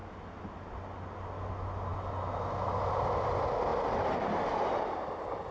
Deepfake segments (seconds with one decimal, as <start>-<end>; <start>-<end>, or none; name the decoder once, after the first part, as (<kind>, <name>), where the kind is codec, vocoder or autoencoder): none